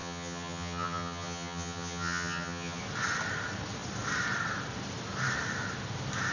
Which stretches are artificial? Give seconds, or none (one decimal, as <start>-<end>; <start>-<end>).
0.0-2.8

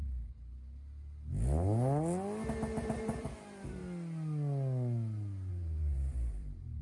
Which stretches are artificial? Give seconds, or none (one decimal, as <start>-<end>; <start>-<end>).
2.8-3.8; 5.5-6.8

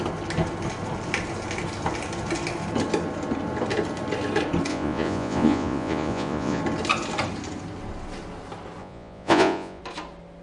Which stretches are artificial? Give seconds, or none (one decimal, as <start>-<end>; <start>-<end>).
4.7-6.6; 8.8-9.8

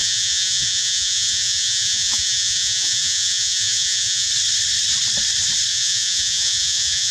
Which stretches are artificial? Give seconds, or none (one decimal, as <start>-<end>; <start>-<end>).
0.0-4.3; 5.7-7.1